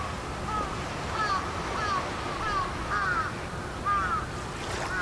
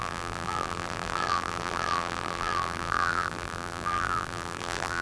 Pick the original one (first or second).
first